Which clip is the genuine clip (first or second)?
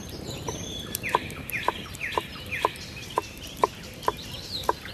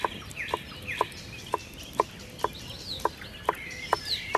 second